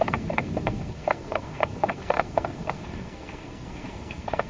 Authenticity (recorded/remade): remade